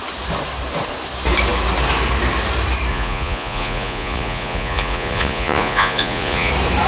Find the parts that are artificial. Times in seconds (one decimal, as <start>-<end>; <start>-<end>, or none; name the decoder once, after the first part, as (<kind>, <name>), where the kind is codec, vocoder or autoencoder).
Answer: 2.9-6.5 (vocoder, Vocos)